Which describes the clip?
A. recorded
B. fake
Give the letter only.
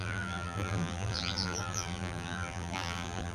B